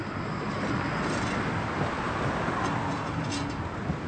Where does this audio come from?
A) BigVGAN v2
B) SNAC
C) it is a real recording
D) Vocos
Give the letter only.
C